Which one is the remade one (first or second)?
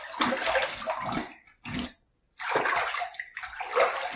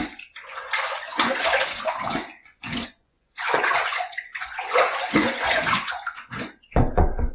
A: second